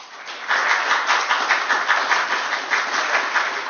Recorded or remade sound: recorded